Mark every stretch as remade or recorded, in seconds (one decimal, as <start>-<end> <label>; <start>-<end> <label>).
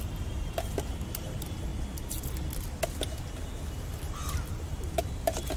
0.0-1.7 remade; 1.7-4.5 recorded; 4.5-5.6 remade